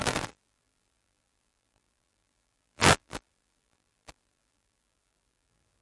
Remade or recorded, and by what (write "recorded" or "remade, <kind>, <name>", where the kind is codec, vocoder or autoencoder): remade, vocoder, BigVGAN v2